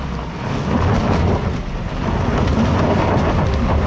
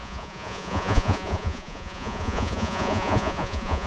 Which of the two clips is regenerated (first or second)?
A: second